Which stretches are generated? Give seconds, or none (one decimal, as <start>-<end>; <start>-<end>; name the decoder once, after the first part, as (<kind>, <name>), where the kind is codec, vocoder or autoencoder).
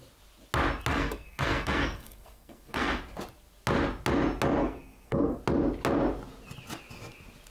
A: 0.9-3.0 (codec, SNAC); 4.6-5.4